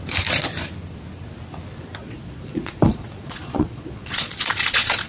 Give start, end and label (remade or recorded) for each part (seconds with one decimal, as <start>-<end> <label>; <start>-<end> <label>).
0.0-2.0 recorded; 2.0-5.1 remade